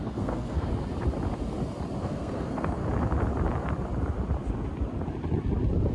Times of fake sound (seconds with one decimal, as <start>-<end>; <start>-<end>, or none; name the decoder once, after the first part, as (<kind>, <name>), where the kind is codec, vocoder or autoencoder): 0.0-0.7 (codec, SNAC); 2.0-2.8